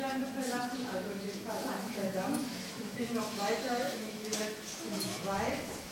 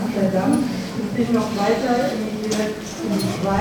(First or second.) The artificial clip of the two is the first